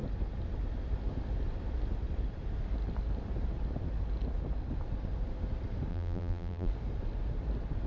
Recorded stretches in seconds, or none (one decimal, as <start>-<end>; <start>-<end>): 0.0-5.9; 6.7-7.9